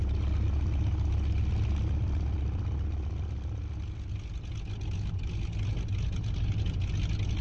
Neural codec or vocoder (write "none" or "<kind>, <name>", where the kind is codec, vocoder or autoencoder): none